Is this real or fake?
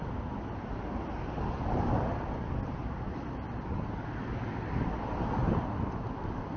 real